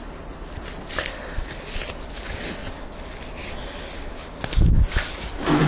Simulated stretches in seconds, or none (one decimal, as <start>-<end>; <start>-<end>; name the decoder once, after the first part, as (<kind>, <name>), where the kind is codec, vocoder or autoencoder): 2.6-3.5 (vocoder, BigVGAN v2)